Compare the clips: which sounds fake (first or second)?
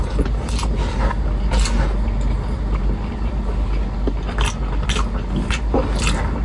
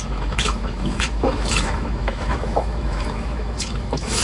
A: second